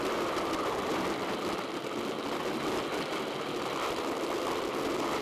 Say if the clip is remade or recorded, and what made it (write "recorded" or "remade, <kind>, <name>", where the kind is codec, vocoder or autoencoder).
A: recorded